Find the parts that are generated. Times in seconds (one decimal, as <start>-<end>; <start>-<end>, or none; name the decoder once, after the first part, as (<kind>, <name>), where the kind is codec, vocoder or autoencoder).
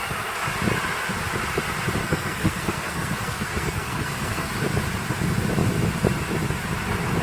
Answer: 2.0-4.5 (codec, SNAC)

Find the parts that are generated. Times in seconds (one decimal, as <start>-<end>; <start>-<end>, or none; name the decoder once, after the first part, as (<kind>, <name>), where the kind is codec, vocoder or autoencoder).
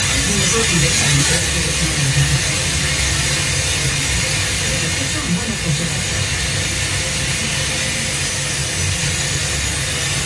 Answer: none